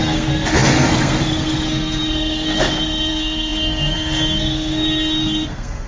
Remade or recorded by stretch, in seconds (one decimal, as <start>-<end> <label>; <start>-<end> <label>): 0.0-5.9 remade